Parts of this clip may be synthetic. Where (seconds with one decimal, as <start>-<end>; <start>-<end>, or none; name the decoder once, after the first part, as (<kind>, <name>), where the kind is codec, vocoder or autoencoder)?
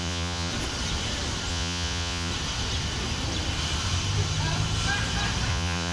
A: 0.0-0.5 (vocoder, Vocos); 1.5-2.3; 5.5-5.9